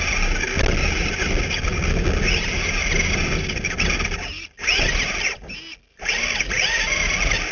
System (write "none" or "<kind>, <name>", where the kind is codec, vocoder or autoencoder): none